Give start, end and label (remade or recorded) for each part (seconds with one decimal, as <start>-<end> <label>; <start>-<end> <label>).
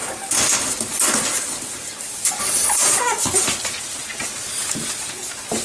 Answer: 0.0-2.4 recorded; 2.4-2.9 remade; 2.9-5.6 recorded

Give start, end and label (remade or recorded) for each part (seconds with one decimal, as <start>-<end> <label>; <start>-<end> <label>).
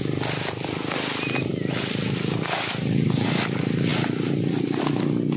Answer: 0.0-5.4 recorded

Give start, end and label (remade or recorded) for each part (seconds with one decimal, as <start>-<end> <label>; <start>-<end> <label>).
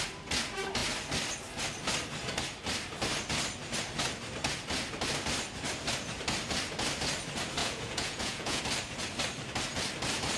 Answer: 0.0-7.6 recorded; 7.6-8.6 remade; 8.6-10.4 recorded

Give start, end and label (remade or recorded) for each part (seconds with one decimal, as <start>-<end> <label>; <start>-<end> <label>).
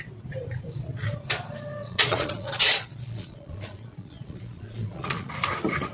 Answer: 0.0-1.8 recorded; 1.8-5.3 remade; 5.3-5.9 recorded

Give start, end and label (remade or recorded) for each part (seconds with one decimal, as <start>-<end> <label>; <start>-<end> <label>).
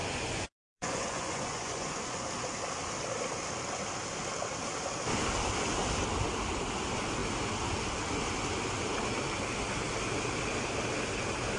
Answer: 0.0-2.3 remade; 2.3-11.6 recorded